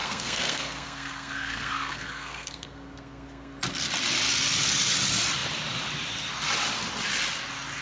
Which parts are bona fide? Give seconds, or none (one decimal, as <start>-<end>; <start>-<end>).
3.6-7.8